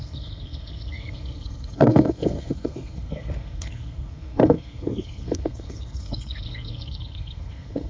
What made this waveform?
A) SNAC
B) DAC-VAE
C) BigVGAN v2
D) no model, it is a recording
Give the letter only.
A